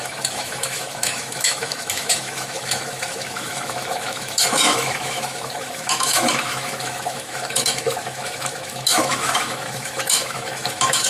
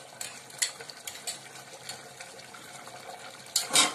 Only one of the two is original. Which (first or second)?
second